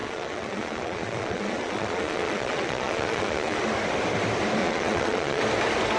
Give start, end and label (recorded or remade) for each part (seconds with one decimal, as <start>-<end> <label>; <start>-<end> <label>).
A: 0.0-3.6 remade; 3.6-4.6 recorded; 4.6-5.4 remade; 5.4-6.0 recorded